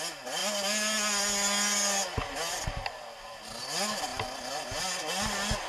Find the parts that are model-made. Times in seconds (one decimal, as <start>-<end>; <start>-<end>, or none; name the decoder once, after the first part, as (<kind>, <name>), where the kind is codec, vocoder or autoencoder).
none